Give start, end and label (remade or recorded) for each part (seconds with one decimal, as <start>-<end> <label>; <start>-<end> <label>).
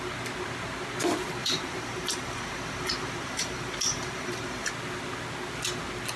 0.0-1.4 recorded; 1.4-4.7 remade; 4.7-6.2 recorded